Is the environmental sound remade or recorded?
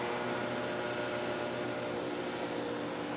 recorded